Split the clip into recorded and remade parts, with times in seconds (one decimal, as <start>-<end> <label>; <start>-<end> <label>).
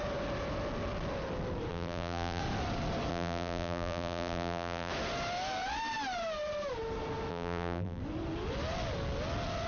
0.0-1.7 recorded; 1.7-2.4 remade; 2.4-3.1 recorded; 3.1-4.9 remade; 4.9-7.3 recorded; 7.3-8.0 remade; 8.0-9.7 recorded